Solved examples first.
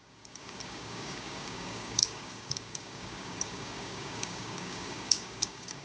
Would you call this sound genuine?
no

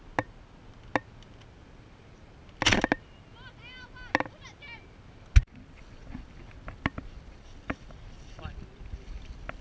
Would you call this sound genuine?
yes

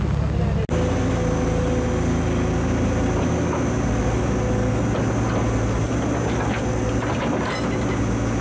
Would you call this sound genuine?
yes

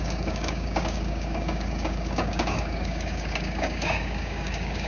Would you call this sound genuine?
no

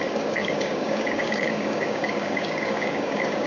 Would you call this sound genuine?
no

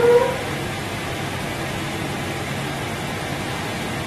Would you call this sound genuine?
yes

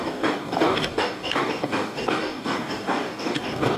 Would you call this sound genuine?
no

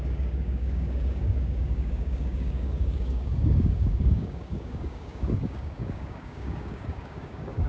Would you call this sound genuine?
no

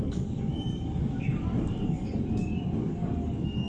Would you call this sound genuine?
no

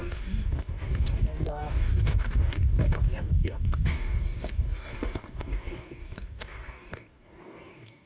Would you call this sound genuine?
no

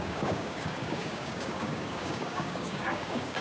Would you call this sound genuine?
no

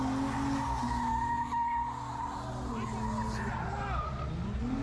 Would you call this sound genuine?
yes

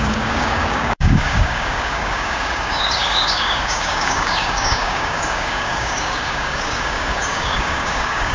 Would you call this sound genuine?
no